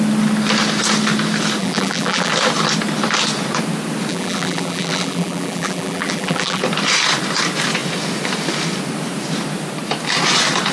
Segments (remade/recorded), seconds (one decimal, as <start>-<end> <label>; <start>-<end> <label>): 0.0-1.6 recorded; 1.6-2.3 remade; 2.3-4.1 recorded; 4.1-6.6 remade; 6.6-10.7 recorded